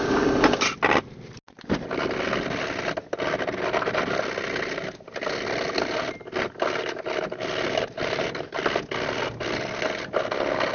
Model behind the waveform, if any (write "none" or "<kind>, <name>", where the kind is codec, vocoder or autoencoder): none